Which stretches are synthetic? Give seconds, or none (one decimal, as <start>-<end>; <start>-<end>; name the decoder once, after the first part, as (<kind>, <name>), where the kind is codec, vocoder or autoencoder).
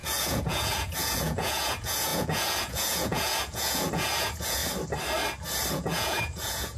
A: 0.0-4.6 (vocoder, Vocos); 5.7-6.8